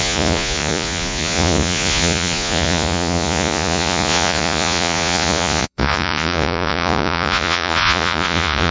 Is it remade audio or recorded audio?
remade